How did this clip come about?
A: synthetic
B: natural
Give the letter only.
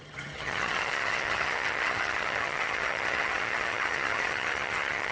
A